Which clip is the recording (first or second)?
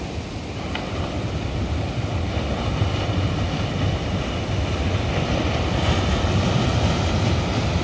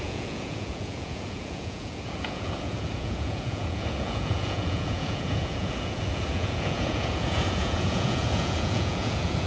first